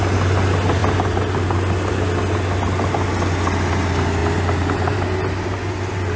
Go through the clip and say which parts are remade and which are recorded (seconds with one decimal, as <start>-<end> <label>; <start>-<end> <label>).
0.0-4.2 recorded; 4.2-5.0 remade; 5.0-6.2 recorded